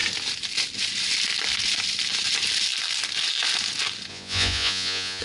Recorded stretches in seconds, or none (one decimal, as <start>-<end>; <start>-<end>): 0.0-4.1